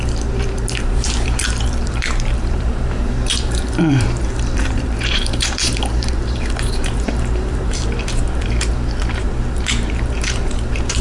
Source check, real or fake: fake